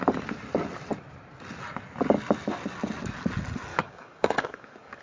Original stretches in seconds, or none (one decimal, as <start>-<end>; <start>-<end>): 0.0-3.7